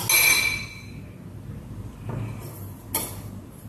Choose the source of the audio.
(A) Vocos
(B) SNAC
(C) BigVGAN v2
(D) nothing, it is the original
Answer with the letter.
D